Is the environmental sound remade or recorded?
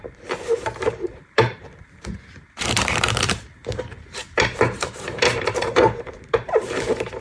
remade